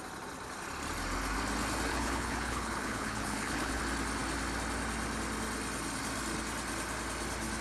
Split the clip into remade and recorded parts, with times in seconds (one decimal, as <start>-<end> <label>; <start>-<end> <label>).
0.0-1.9 recorded; 1.9-3.8 remade; 3.8-7.6 recorded